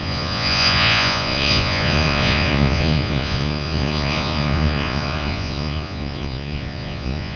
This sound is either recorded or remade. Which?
remade